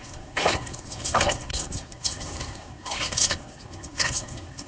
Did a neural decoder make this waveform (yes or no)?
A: yes